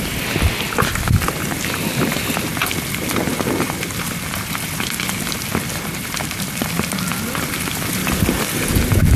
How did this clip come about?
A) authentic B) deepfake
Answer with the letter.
A